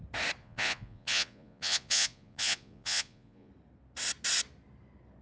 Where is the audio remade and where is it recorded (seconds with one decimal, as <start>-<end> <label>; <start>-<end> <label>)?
0.0-0.4 recorded; 0.4-3.5 remade; 3.5-5.2 recorded